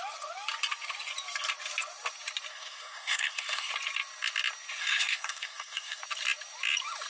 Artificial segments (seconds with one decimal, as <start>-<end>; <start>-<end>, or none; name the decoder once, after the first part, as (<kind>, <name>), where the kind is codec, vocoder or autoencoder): 2.5-3.7 (codec, SNAC); 4.8-6.0